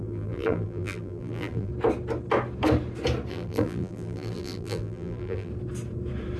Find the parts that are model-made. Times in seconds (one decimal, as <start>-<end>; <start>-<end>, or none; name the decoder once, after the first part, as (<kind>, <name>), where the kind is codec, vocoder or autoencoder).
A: 0.0-1.7 (vocoder, BigVGAN v2); 3.3-5.5